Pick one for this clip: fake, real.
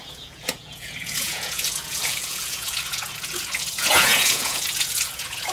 fake